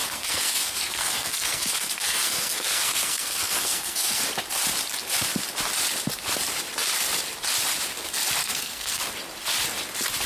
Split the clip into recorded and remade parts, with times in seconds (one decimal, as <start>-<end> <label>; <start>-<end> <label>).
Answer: 0.0-4.2 remade; 4.2-8.4 recorded; 8.4-9.0 remade; 9.0-10.3 recorded